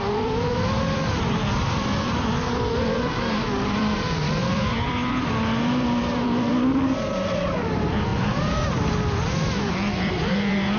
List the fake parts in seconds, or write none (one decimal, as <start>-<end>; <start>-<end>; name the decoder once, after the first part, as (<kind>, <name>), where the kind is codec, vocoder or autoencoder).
0.0-10.8 (vocoder, BigVGAN v2)